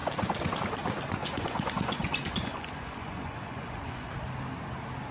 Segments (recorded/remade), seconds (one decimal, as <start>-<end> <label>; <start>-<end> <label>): 0.0-1.2 recorded; 1.2-4.1 remade; 4.1-5.1 recorded